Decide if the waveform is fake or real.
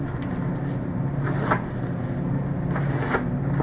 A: real